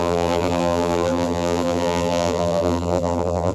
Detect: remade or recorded remade